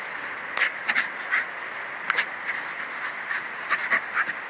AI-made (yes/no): no